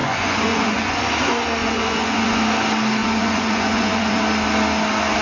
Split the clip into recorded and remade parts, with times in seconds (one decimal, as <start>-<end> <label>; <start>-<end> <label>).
0.0-1.0 remade; 1.0-1.6 recorded; 1.6-2.4 remade; 2.4-3.0 recorded; 3.0-4.2 remade; 4.2-5.2 recorded